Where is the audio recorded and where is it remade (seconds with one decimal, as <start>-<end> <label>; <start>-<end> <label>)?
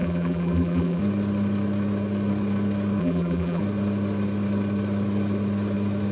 0.0-1.0 remade; 1.0-3.0 recorded; 3.0-3.6 remade; 3.6-6.1 recorded